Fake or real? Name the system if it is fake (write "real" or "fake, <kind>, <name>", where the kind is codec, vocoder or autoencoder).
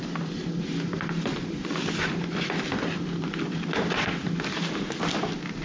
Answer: real